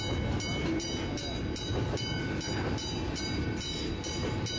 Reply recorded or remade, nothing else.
recorded